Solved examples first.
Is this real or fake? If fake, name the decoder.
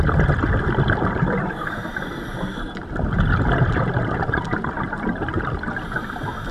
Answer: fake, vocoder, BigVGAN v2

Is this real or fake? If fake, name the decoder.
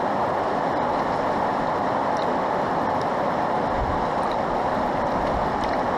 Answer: real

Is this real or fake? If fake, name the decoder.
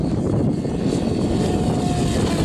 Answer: real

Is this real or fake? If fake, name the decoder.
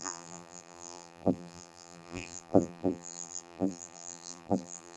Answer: fake, vocoder, BigVGAN v2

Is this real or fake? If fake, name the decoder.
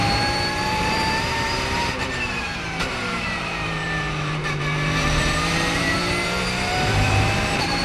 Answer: fake, vocoder, BigVGAN v2